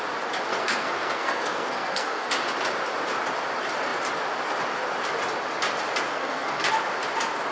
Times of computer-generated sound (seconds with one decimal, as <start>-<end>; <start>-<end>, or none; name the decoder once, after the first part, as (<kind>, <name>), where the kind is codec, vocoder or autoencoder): 0.5-2.3 (codec, SNAC); 6.1-6.7